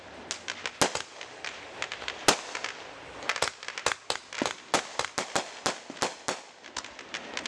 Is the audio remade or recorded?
recorded